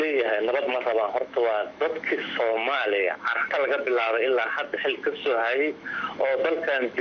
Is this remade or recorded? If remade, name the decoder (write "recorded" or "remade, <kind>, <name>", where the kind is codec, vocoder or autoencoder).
remade, autoencoder, DAC-VAE